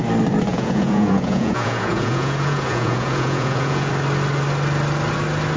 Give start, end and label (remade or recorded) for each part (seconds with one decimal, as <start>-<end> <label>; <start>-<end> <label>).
0.0-0.5 recorded; 0.5-3.9 remade; 3.9-5.6 recorded